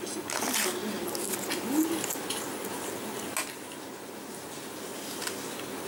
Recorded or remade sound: recorded